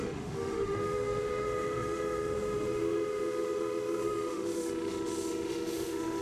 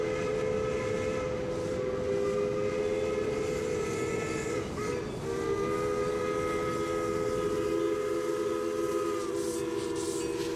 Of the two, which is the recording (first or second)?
second